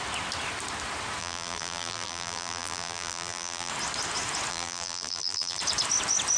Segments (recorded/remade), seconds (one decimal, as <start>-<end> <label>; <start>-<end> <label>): 0.0-1.2 recorded; 1.2-3.7 remade; 3.7-4.5 recorded; 4.5-5.6 remade; 5.6-6.4 recorded